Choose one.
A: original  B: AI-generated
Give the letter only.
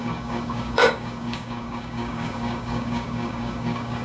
B